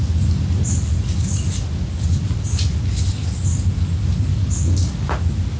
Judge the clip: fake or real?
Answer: real